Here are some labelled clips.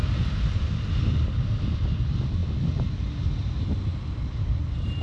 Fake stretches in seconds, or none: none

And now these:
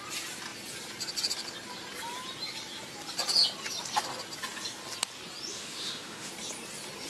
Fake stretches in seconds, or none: 5.5-6.3 (autoencoder, DAC-VAE)

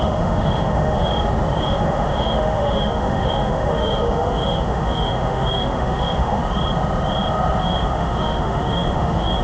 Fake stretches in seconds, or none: 0.0-1.1 (autoencoder, DAC-VAE); 1.6-6.4; 7.6-9.4

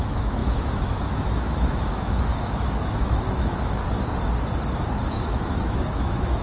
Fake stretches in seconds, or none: 0.0-3.8 (autoencoder, DAC-VAE); 5.0-6.4

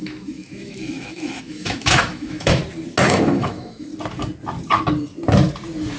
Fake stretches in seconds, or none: 0.0-2.6 (autoencoder, DAC-VAE); 3.1-3.9

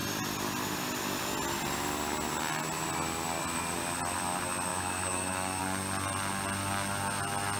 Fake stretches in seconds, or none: 4.7-5.6 (autoencoder, DAC-VAE)

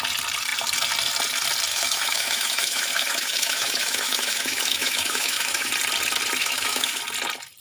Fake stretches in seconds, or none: 1.7-5.7 (autoencoder, DAC-VAE); 6.4-7.0

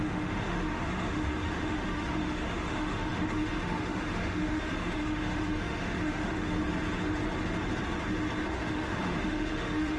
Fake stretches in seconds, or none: 0.0-6.6 (autoencoder, DAC-VAE); 8.5-10.0